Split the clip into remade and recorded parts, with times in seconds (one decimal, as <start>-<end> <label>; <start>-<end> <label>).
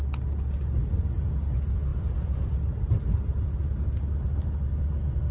0.0-5.3 recorded